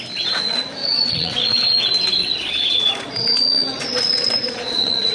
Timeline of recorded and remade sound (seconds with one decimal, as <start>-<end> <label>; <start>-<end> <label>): 0.0-0.8 recorded; 0.8-1.8 remade; 1.8-2.2 recorded; 2.2-5.1 remade